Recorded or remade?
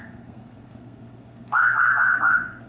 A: remade